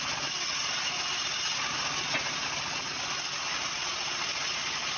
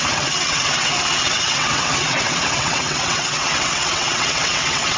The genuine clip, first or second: first